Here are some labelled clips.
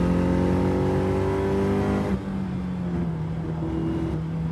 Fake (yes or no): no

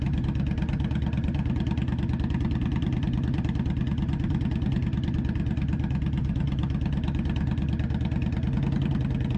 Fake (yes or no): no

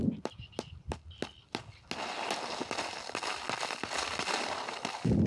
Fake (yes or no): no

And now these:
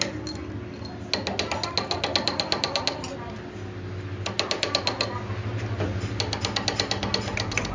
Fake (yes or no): no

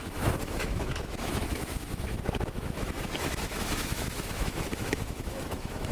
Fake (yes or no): yes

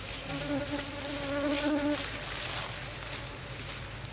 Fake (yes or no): no